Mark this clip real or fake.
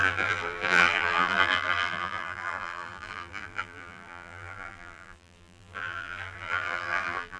fake